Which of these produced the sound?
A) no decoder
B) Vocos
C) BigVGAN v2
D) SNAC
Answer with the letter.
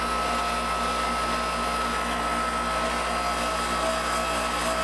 A